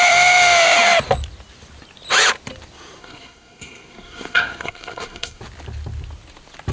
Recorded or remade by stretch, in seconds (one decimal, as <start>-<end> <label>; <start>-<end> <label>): 0.0-3.0 recorded; 3.0-5.4 remade; 5.4-6.7 recorded